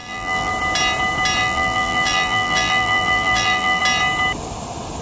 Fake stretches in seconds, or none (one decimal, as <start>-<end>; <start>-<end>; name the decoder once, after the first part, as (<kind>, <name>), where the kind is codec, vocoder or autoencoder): 0.0-0.5 (vocoder, BigVGAN v2); 1.4-3.8